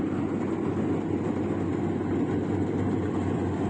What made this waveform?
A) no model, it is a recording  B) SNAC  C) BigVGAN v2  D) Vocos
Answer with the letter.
A